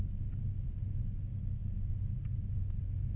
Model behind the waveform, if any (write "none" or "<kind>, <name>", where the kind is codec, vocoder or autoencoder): none